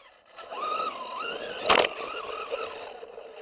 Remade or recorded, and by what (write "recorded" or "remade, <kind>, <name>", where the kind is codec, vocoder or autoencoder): recorded